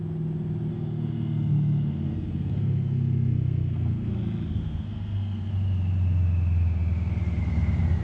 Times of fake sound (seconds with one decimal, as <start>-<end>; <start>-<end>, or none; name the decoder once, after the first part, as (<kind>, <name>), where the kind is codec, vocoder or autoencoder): 0.7-5.5 (codec, SNAC)